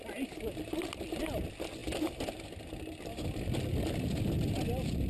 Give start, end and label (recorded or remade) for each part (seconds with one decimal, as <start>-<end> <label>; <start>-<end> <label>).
0.0-5.1 recorded